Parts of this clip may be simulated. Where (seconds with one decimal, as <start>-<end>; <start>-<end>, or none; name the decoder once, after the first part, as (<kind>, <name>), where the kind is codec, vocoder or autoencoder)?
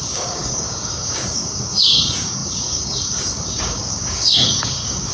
0.0-5.1 (codec, DAC)